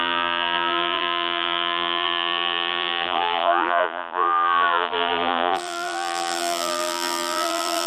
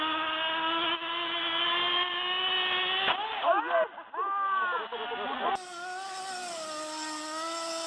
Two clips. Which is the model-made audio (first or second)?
first